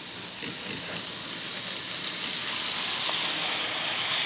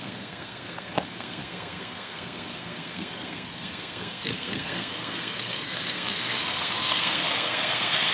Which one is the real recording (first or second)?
first